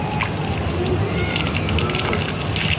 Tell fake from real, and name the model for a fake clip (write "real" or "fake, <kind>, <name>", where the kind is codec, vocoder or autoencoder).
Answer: real